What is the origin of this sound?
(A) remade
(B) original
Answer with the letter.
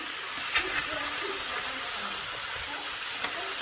B